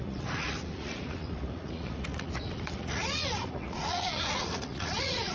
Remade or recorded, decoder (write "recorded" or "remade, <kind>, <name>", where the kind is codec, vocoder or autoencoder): remade, vocoder, Vocos